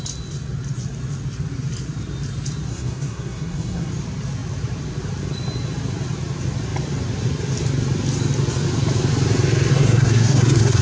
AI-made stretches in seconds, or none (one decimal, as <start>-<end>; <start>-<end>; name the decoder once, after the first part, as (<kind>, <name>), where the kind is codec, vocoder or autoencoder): 2.7-3.9 (codec, SNAC); 9.7-10.8